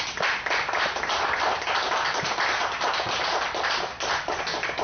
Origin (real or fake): real